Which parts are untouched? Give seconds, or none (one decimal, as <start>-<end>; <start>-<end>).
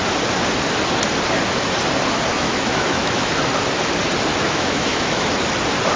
0.0-2.3; 3.3-4.3; 5.3-6.0